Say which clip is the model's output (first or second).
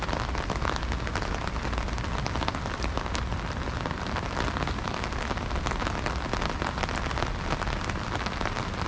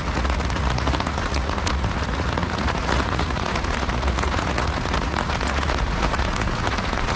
second